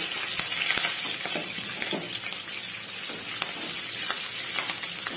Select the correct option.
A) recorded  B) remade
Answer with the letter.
A